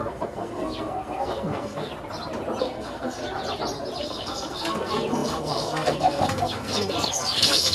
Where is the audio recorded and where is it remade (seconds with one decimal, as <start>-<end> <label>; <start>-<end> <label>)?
0.0-1.9 remade; 1.9-2.6 recorded; 2.6-3.2 remade; 3.2-4.0 recorded; 4.0-7.7 remade